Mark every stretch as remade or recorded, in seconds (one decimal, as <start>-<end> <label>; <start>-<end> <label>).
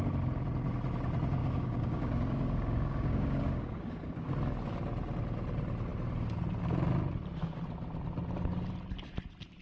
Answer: 0.0-1.4 recorded; 1.4-4.3 remade; 4.3-9.6 recorded